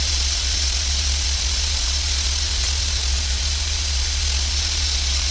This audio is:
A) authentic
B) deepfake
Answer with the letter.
B